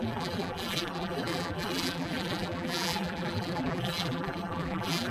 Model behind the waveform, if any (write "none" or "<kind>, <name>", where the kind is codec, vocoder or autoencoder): vocoder, BigVGAN v2